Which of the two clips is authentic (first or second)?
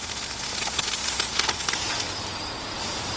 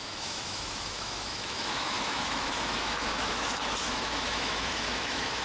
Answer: first